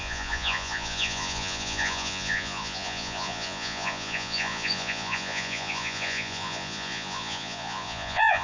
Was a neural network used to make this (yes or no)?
yes